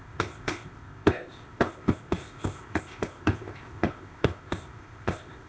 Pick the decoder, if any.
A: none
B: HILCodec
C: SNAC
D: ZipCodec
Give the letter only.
D